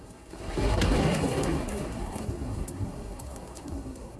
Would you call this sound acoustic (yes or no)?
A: no